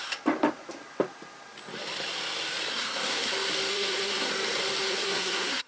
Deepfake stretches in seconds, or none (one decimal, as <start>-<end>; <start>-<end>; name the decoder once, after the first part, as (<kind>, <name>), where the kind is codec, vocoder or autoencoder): 2.7-3.3 (codec, SNAC); 3.7-4.3; 4.9-5.7